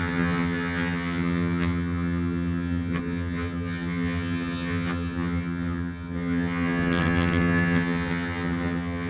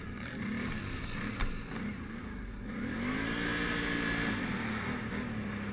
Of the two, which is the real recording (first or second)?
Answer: second